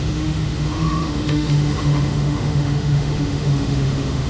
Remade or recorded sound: remade